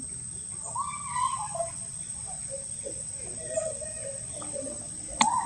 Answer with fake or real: fake